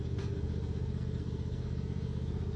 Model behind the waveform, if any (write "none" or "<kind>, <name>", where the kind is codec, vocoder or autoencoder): codec, SNAC